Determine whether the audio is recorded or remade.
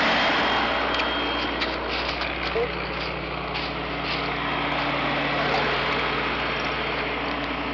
recorded